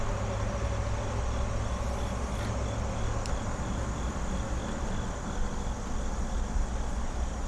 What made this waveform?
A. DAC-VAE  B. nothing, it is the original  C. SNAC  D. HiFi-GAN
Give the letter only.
B